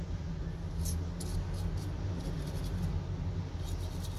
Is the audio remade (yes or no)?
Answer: no